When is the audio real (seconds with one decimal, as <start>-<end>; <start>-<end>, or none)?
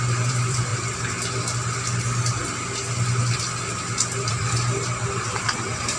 0.7-4.3